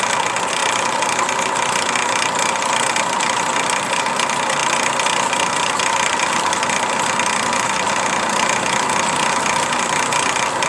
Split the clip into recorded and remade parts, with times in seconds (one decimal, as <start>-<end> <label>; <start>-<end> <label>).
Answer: 0.0-0.6 recorded; 0.6-2.7 remade; 2.7-4.6 recorded; 4.6-9.8 remade; 9.8-10.7 recorded